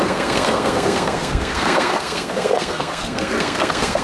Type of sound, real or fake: fake